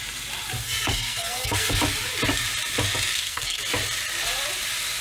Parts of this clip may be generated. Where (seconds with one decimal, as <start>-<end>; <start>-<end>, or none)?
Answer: 0.6-1.8; 3.1-3.6

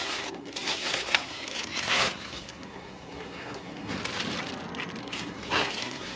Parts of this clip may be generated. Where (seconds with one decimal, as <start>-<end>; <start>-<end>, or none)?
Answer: 0.0-4.0; 5.0-6.2